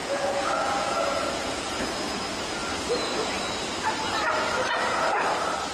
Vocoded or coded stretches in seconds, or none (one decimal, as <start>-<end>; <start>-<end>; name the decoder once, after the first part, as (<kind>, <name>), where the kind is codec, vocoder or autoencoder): 0.0-1.8 (vocoder, Vocos)

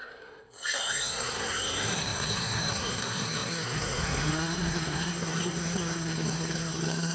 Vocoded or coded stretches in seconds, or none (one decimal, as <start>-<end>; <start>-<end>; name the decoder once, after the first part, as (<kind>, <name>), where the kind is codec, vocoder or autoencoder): 0.0-7.1 (codec, SNAC)

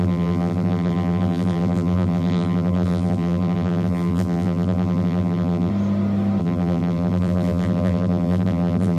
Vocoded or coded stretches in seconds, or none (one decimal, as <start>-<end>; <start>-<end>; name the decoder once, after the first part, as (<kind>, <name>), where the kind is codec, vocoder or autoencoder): 0.0-5.7 (vocoder, BigVGAN v2); 6.4-9.0